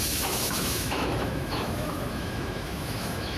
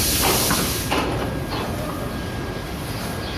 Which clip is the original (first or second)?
second